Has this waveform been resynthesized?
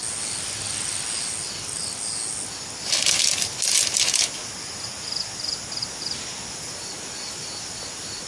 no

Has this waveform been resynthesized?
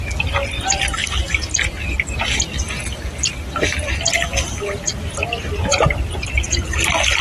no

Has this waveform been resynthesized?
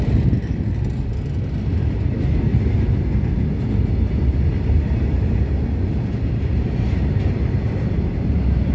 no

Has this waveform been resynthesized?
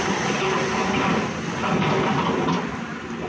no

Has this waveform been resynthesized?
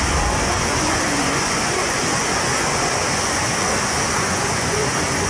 yes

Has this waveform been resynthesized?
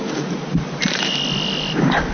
no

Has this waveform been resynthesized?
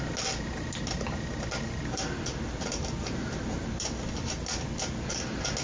no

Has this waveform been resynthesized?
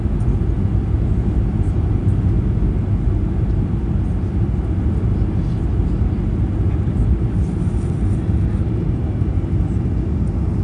no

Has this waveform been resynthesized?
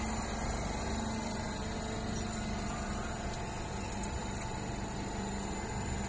no